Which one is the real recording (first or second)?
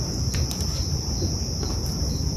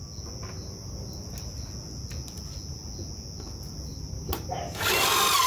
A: second